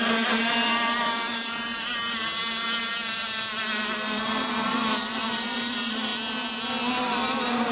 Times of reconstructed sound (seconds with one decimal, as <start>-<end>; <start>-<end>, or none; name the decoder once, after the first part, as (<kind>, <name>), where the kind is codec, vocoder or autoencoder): 0.0-6.1 (vocoder, BigVGAN v2); 6.7-7.7